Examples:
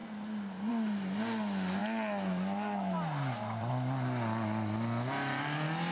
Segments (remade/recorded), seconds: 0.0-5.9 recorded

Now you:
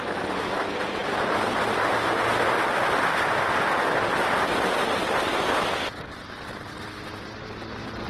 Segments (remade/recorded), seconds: 0.0-1.0 recorded; 1.0-1.9 remade; 1.9-8.1 recorded

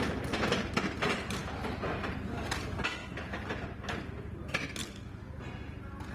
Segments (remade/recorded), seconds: 0.0-6.1 recorded